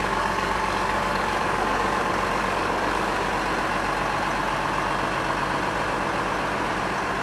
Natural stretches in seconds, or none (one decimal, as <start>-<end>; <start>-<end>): 3.3-7.2